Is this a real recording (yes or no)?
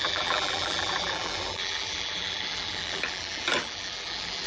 no